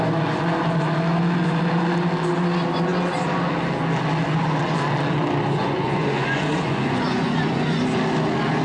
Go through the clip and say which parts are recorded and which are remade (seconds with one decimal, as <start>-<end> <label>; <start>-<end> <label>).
0.0-5.6 recorded; 5.6-7.8 remade; 7.8-8.6 recorded